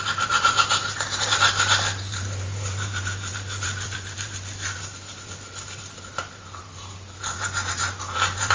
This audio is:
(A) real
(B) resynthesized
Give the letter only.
B